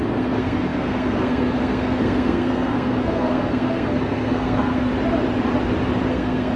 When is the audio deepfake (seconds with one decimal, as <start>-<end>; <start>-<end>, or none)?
0.0-4.9; 6.1-6.6